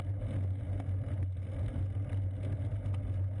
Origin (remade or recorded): recorded